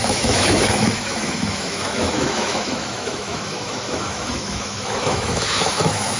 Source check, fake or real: fake